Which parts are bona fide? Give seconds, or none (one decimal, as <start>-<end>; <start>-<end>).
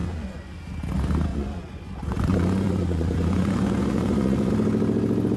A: 0.5-1.3; 4.5-5.4